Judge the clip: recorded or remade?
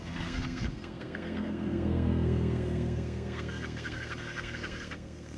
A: remade